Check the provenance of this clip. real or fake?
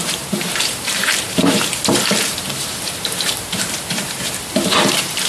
fake